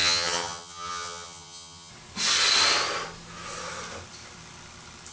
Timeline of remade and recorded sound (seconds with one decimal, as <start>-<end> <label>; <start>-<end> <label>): 0.0-1.9 remade; 1.9-5.1 recorded